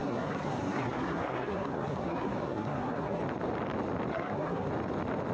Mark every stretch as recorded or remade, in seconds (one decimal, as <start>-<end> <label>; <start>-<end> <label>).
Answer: 0.0-3.2 remade; 3.2-4.1 recorded; 4.1-4.7 remade; 4.7-5.3 recorded